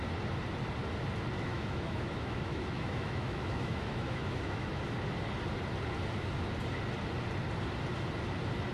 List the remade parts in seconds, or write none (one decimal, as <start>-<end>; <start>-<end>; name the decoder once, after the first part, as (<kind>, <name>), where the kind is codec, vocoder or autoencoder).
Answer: 1.5-4.8 (autoencoder, DAC-VAE)